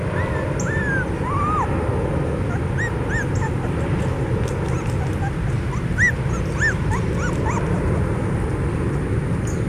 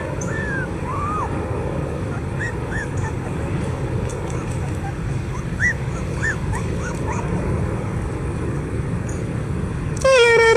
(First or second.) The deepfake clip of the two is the second